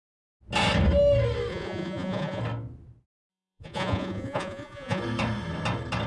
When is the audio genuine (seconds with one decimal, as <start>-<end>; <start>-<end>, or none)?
0.0-1.5; 2.4-3.3; 5.0-6.1